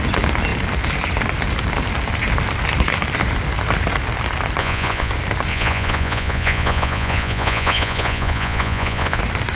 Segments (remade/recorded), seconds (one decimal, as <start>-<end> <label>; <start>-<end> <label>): 0.0-4.6 recorded; 4.6-5.1 remade; 5.1-5.5 recorded; 5.5-9.2 remade; 9.2-9.6 recorded